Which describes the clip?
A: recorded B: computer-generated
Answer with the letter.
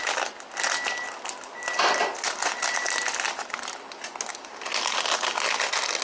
A